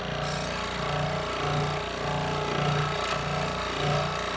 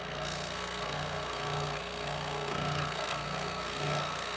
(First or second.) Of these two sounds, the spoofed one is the second